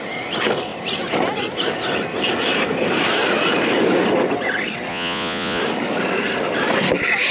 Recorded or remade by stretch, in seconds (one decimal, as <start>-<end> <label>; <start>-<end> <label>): 0.0-4.9 recorded; 4.9-5.6 remade; 5.6-7.3 recorded